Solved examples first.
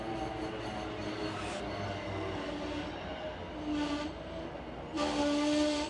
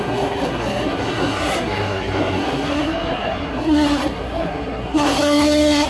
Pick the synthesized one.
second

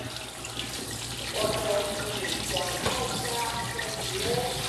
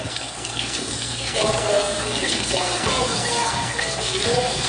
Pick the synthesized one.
second